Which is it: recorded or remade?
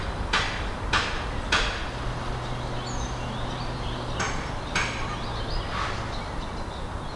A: recorded